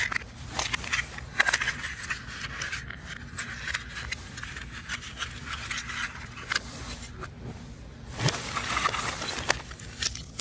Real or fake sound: real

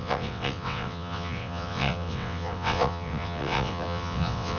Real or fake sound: fake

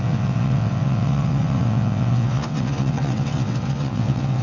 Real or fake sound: fake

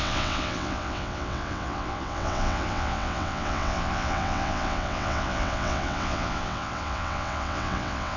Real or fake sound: fake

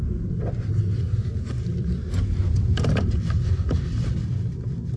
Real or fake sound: real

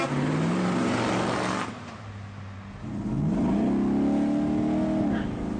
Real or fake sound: real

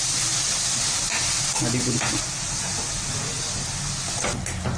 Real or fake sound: real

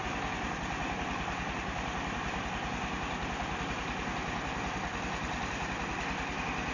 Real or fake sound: real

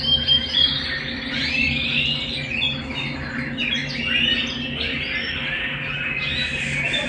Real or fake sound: real